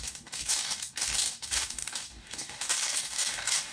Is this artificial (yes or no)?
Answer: yes